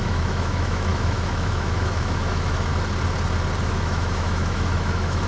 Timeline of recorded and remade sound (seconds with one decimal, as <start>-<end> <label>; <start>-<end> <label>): 0.0-2.7 remade; 2.7-3.6 recorded; 3.6-5.3 remade